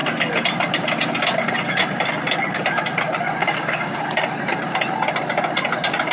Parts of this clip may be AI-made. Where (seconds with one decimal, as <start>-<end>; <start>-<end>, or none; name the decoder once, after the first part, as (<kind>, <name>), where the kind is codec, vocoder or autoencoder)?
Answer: 3.4-4.0 (codec, DAC)